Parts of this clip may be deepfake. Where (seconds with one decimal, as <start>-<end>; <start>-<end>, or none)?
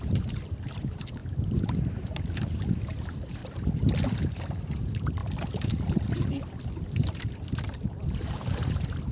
0.0-3.4; 4.6-5.2; 6.3-9.1